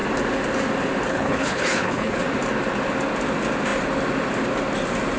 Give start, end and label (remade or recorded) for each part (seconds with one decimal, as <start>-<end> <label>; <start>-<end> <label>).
0.0-1.1 recorded; 1.1-2.2 remade; 2.2-5.2 recorded